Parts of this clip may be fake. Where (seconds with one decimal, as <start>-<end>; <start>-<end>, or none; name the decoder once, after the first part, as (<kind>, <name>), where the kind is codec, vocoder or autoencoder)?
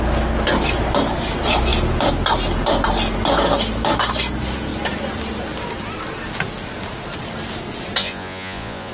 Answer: 8.0-8.9 (vocoder, Vocos)